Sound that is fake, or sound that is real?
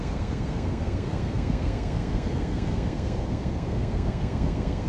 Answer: fake